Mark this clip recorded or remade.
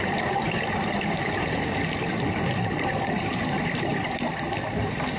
remade